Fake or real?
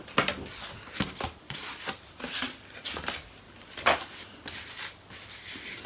real